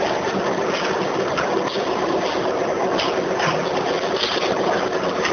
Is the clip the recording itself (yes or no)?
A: yes